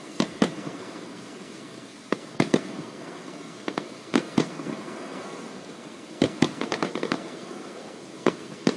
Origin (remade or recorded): remade